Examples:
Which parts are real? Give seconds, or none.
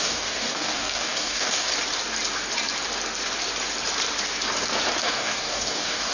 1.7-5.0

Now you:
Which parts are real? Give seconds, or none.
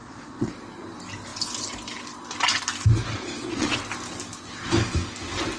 0.5-3.1; 3.8-5.6